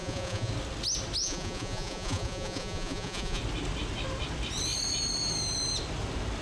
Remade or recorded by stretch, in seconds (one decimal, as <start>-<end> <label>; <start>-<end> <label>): 0.0-0.5 remade; 0.5-1.2 recorded; 1.2-3.4 remade; 3.4-6.4 recorded